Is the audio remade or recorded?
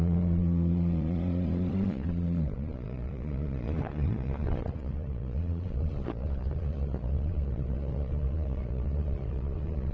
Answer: remade